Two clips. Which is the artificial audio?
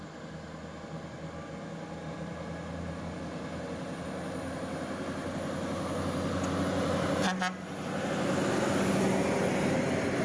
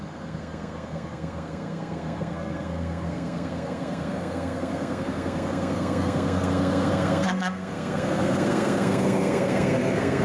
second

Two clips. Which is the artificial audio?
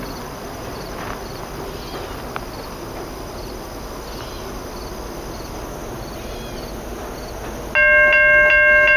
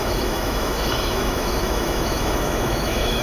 second